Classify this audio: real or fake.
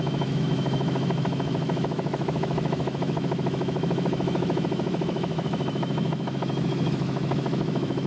fake